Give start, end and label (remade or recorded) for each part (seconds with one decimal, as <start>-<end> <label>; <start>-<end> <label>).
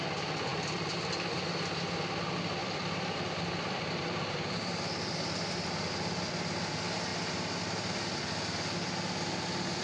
0.0-0.5 recorded; 0.5-1.9 remade; 1.9-2.6 recorded; 2.6-5.9 remade; 5.9-9.8 recorded